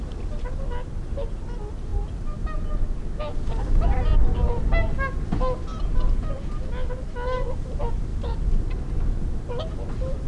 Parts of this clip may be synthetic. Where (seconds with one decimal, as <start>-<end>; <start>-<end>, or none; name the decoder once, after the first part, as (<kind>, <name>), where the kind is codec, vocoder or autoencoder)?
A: none